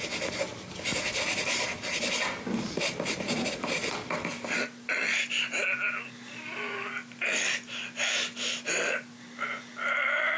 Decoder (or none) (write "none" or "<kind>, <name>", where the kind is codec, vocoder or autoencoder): none